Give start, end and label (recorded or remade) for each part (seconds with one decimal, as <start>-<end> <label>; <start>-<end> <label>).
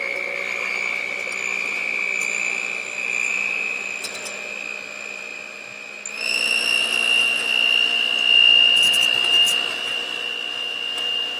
0.0-2.2 recorded; 2.2-3.3 remade; 3.3-11.4 recorded